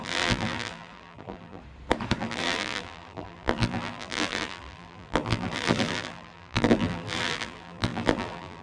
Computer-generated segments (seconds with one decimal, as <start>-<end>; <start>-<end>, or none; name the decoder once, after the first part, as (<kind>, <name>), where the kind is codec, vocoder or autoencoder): 0.0-1.6 (vocoder, BigVGAN v2); 2.2-8.6